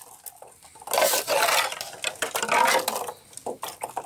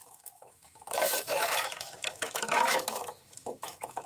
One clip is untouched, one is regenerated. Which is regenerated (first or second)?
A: second